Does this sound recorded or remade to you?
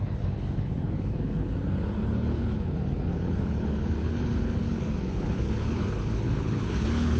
remade